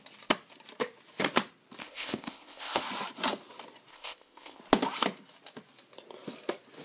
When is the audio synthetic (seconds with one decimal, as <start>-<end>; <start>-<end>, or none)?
1.8-2.8; 3.9-4.6